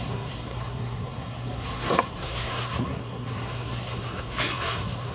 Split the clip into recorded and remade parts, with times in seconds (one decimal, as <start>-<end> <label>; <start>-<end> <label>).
0.0-5.1 remade